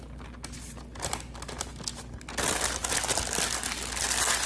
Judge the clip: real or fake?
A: real